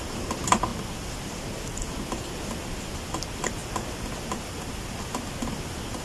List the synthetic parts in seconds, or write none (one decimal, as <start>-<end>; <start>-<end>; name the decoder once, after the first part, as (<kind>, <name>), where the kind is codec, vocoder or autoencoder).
none